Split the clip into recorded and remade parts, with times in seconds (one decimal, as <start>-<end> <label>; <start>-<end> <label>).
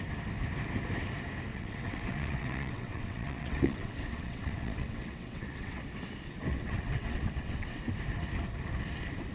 0.0-1.5 recorded; 1.5-5.8 remade; 5.8-6.5 recorded; 6.5-7.8 remade; 7.8-9.3 recorded